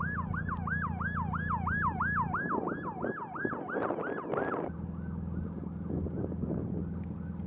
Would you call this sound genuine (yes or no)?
yes